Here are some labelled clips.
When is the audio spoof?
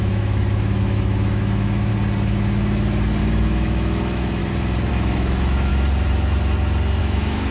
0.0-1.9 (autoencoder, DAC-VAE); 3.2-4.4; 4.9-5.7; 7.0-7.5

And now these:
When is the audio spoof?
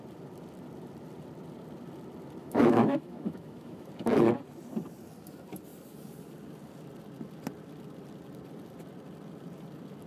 2.4-3.9 (autoencoder, DAC-VAE)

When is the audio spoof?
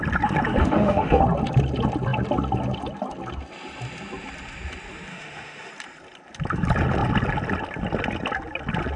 0.6-1.2 (autoencoder, DAC-VAE); 5.1-5.7